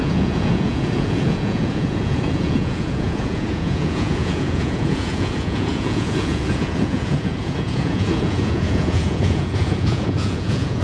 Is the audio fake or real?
fake